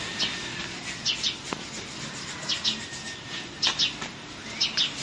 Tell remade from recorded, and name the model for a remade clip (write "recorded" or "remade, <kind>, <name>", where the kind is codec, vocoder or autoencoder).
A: recorded